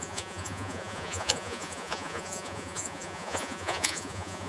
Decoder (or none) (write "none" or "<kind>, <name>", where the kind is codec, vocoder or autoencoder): vocoder, Vocos